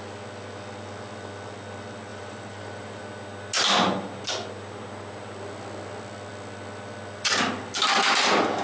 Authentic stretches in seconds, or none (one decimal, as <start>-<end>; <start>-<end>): 0.0-2.1; 3.0-8.6